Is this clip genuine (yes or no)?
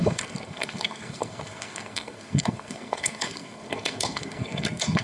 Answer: no